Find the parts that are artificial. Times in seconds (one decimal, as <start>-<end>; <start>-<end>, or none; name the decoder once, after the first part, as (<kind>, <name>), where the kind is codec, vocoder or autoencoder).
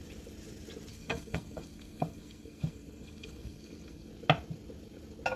0.9-4.1 (codec, SNAC)